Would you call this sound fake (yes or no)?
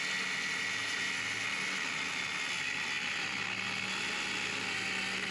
no